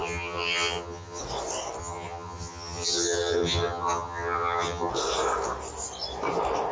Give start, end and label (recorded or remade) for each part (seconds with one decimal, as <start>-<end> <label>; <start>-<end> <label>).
0.0-1.2 remade; 1.2-1.8 recorded; 1.8-4.9 remade; 4.9-6.7 recorded